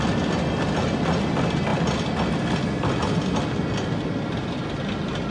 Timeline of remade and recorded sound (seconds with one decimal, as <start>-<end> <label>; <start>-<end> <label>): 0.0-5.3 recorded